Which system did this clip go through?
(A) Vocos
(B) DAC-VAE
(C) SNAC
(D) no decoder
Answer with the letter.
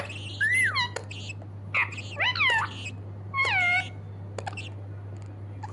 D